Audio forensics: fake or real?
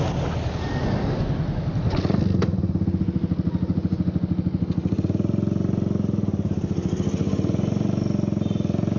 real